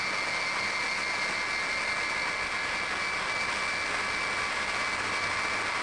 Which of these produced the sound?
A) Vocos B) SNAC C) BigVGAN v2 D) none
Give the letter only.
D